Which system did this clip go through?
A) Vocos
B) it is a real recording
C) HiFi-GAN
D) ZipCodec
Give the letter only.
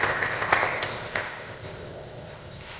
D